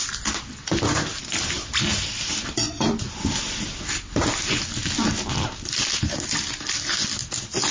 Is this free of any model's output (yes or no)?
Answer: yes